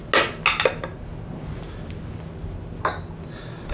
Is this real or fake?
real